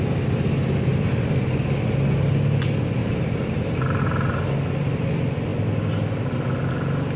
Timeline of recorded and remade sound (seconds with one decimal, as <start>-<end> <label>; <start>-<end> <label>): 0.0-0.9 recorded; 0.9-1.6 remade; 1.6-3.0 recorded; 3.0-4.0 remade; 4.0-7.2 recorded